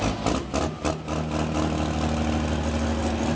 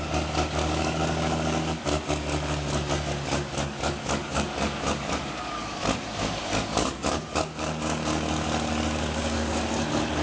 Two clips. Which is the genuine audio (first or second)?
first